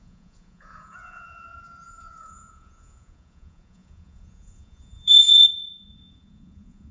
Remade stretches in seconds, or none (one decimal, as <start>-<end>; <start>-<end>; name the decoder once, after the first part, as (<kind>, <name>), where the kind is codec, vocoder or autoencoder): 0.0-6.9 (vocoder, Vocos)